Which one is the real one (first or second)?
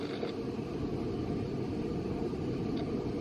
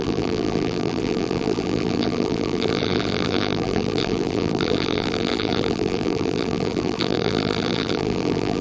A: first